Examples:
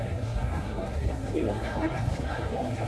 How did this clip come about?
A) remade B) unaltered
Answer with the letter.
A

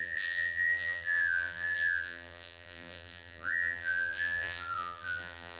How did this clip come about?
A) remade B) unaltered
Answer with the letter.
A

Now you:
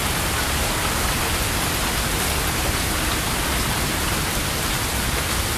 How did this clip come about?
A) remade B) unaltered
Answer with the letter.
B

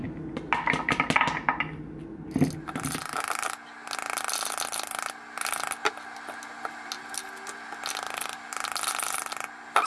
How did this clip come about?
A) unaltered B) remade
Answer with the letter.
A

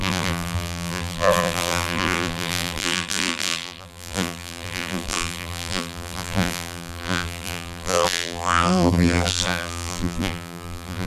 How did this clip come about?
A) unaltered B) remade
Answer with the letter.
B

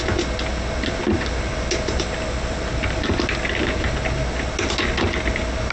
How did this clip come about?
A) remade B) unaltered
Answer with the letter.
B